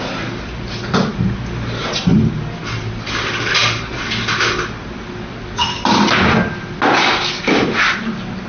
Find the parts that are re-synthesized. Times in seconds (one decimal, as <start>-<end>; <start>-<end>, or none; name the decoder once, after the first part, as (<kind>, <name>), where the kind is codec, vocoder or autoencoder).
none